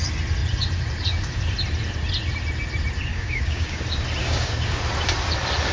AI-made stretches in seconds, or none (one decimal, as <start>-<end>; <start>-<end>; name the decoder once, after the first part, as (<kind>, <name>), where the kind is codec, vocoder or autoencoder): 3.1-3.8 (codec, DAC); 4.2-4.8